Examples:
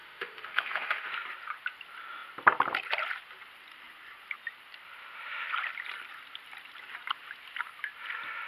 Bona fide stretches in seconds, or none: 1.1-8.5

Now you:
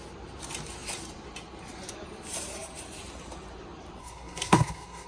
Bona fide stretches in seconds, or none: 0.0-4.0

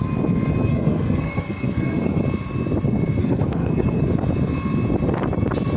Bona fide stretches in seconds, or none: 0.0-0.7; 2.2-3.2; 4.0-5.8

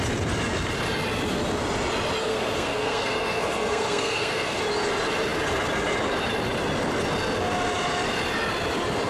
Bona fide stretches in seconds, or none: 0.0-2.2; 4.6-9.1

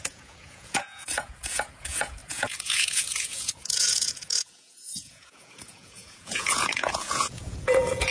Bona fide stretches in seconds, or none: none